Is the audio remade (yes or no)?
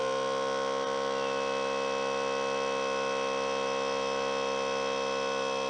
no